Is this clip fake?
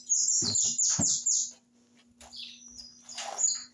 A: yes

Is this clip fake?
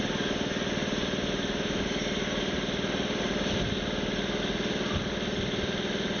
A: no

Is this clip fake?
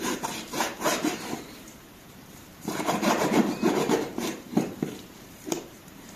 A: yes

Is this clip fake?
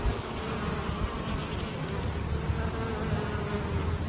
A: no